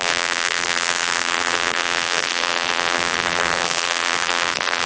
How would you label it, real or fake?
fake